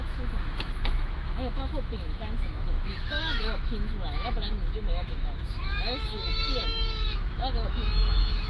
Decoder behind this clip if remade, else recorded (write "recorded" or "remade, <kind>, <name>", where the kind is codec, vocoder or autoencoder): remade, autoencoder, DAC-VAE